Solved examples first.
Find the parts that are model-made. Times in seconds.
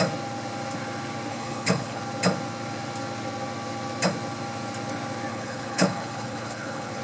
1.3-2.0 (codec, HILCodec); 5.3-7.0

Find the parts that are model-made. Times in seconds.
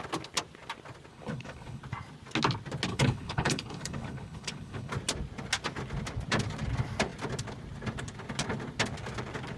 1.1-1.8 (codec, HILCodec); 2.9-4.9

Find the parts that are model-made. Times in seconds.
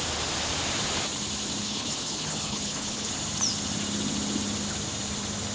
1.6-3.1 (codec, HILCodec)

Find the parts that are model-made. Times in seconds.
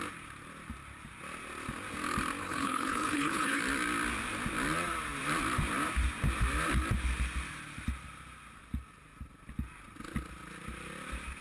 2.4-3.6 (codec, HILCodec)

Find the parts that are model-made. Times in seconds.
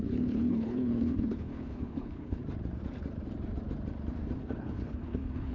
0.0-2.4 (codec, HILCodec); 4.4-5.5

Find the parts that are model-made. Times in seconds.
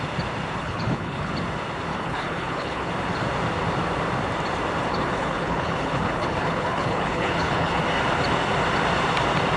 0.6-1.3 (codec, HILCodec); 1.9-2.9; 4.9-7.8